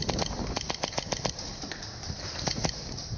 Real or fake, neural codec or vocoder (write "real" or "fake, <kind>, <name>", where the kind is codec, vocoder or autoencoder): real